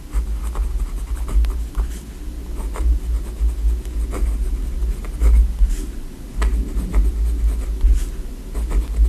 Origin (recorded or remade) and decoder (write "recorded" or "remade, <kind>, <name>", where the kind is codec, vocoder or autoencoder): recorded